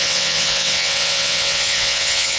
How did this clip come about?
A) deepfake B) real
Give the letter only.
A